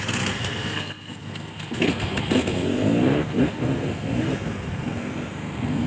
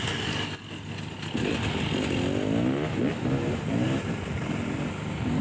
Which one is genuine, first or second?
second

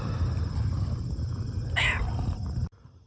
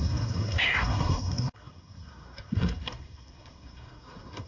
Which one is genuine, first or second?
first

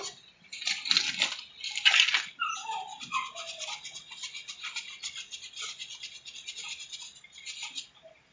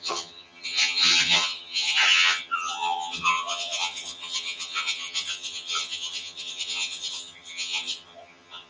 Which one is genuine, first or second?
first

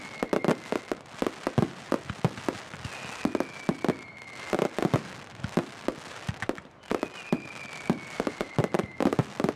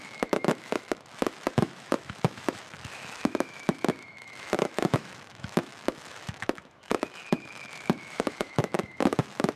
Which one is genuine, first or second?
first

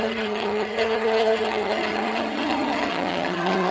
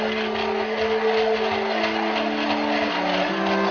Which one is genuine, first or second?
second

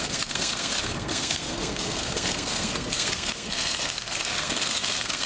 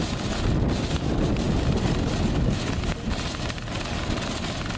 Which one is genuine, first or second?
second